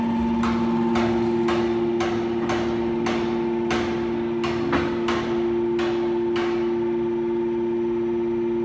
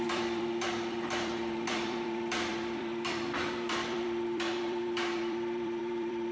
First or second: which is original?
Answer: first